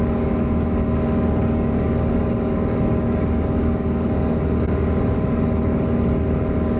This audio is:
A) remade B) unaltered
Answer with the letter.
A